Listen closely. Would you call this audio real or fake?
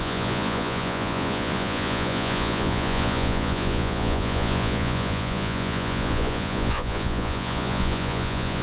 fake